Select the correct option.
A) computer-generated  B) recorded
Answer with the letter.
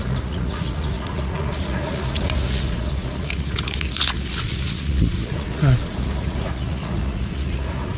A